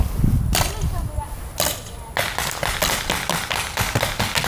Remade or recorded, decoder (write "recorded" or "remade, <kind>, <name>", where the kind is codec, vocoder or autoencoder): recorded